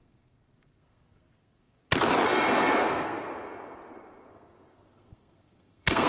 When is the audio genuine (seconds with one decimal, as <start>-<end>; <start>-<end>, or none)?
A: 1.8-2.9; 3.3-4.3